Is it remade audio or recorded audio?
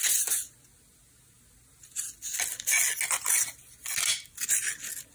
recorded